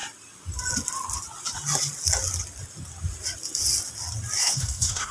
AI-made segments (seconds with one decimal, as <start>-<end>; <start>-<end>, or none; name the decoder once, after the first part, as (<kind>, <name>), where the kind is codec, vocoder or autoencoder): 4.4-5.1 (codec, SNAC)